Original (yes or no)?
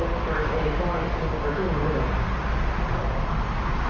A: yes